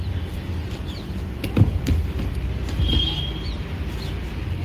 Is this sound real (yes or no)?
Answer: yes